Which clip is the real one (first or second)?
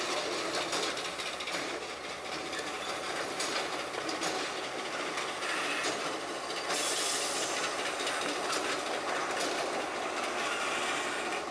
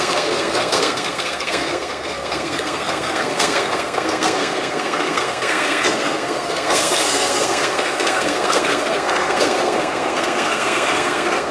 first